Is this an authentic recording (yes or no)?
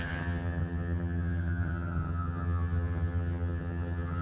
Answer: no